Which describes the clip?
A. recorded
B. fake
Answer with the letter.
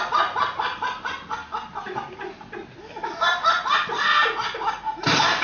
A